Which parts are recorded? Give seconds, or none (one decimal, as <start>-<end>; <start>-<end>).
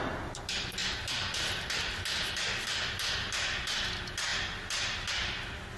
0.0-5.8